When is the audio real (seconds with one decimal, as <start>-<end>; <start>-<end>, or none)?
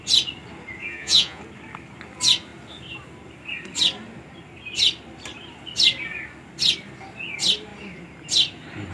0.0-0.8; 1.4-8.9